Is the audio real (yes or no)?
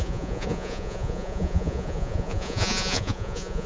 no